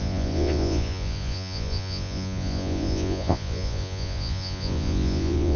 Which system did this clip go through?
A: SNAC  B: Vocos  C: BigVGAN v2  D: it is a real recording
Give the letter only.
B